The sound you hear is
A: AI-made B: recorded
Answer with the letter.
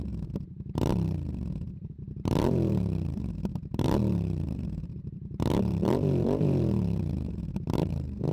A